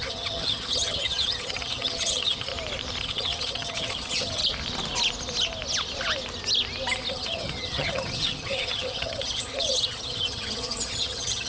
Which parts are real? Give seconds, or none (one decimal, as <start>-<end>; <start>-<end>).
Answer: 2.5-3.0; 4.4-7.1